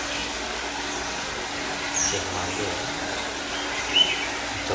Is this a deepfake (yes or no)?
no